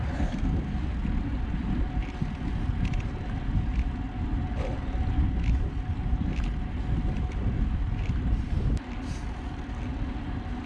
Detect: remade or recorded recorded